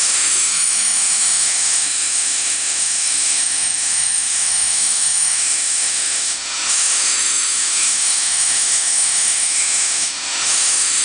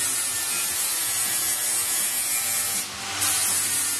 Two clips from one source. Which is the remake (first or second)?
first